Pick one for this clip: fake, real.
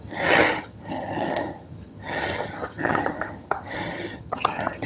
fake